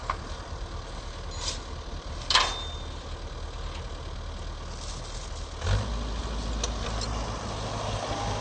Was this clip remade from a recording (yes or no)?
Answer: no